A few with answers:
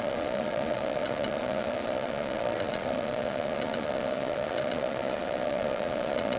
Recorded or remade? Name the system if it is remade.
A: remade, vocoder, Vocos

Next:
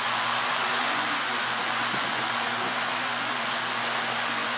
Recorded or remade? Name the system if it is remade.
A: remade, vocoder, Vocos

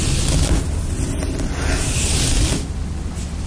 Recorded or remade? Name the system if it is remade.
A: recorded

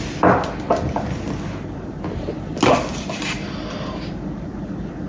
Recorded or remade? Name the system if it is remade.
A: recorded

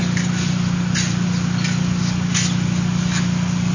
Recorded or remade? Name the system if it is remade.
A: recorded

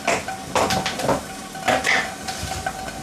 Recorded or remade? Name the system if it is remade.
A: recorded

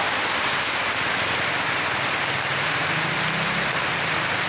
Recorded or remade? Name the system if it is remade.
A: recorded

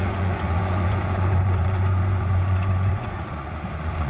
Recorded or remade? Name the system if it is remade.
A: remade, vocoder, Vocos